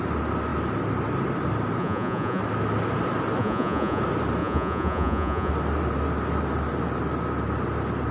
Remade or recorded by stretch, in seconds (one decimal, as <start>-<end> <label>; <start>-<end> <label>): 0.0-1.8 recorded; 1.8-2.4 remade; 2.4-3.4 recorded; 3.4-4.0 remade; 4.0-4.4 recorded; 4.4-5.5 remade; 5.5-8.1 recorded